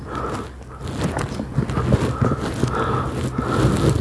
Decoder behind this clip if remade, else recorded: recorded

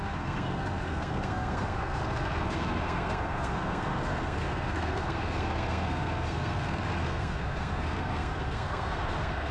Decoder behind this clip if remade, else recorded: remade, codec, SNAC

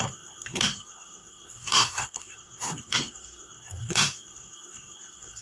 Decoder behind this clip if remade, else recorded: remade, codec, SNAC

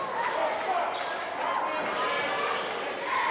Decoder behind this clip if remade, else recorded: recorded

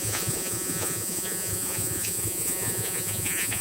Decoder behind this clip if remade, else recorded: remade, vocoder, Vocos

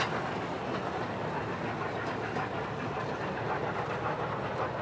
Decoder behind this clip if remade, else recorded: recorded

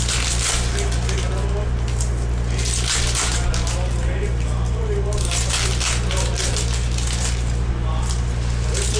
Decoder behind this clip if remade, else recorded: recorded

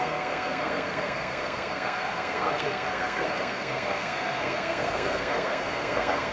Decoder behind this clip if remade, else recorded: remade, codec, SNAC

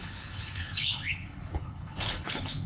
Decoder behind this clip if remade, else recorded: remade, codec, HILCodec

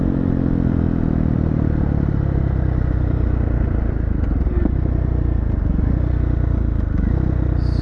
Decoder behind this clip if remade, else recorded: recorded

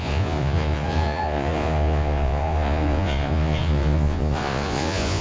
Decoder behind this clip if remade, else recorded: remade, vocoder, Vocos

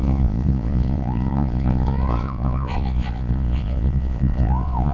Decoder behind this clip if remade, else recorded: remade, vocoder, Vocos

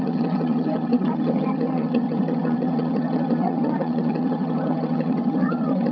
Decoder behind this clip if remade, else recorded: remade, vocoder, HiFi-GAN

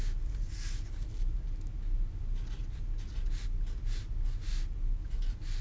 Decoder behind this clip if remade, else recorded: recorded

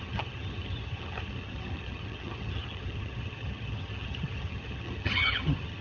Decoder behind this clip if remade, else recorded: remade, vocoder, HiFi-GAN